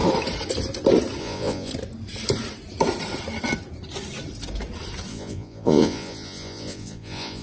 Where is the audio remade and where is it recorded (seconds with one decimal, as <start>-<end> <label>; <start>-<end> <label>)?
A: 0.0-1.2 recorded; 1.2-1.7 remade; 1.7-5.1 recorded; 5.1-7.4 remade